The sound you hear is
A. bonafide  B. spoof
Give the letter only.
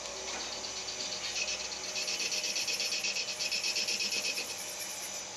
A